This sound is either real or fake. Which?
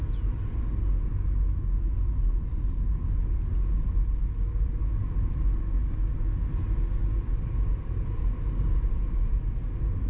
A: real